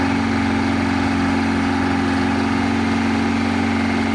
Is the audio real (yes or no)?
yes